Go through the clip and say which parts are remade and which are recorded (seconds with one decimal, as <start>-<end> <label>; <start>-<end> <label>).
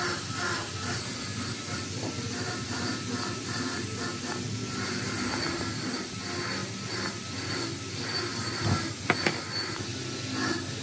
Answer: 0.0-10.8 recorded